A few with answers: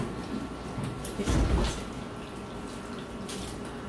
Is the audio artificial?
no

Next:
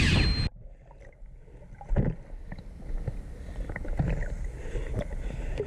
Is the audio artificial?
no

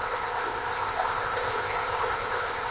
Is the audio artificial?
yes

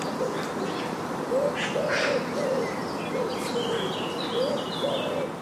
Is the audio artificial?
no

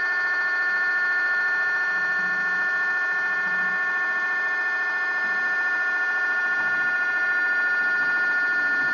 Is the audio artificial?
no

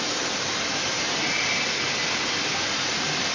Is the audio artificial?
no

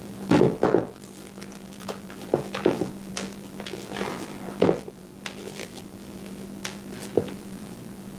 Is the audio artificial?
yes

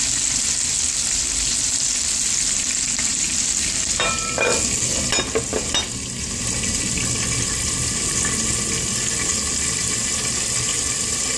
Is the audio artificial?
no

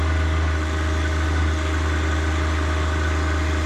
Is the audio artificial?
no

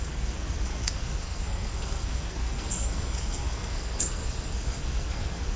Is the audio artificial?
yes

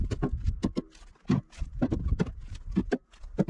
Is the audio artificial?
no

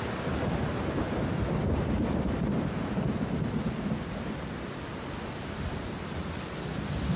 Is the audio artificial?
no